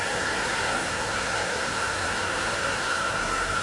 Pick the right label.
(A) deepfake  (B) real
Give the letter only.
A